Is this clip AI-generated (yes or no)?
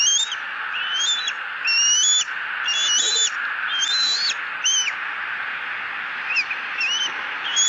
no